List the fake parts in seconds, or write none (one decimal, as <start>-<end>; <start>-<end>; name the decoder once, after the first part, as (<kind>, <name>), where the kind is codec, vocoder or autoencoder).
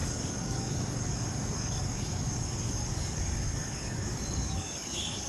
0.0-5.3 (codec, DAC)